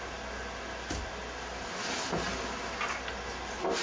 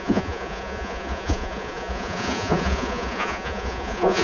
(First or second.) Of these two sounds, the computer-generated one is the second